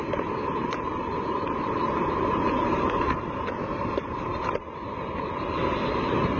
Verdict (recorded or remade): remade